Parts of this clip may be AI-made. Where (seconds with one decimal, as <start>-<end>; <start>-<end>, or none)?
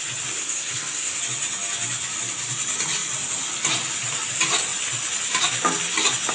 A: 0.4-1.2